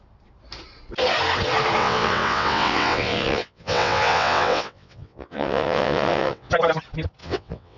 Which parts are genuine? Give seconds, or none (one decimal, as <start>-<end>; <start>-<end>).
0.0-1.8; 6.5-7.2